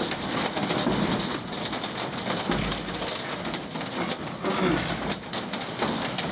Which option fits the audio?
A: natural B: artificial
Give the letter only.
A